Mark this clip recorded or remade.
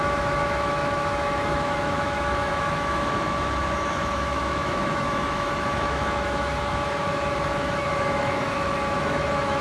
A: remade